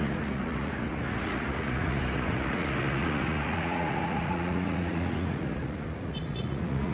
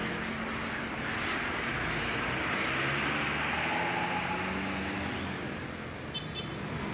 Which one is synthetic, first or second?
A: first